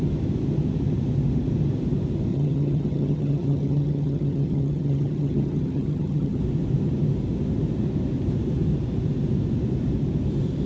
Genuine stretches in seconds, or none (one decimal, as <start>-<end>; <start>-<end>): 0.0-2.3; 6.4-10.7